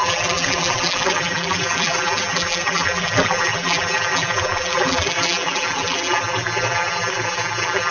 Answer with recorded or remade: remade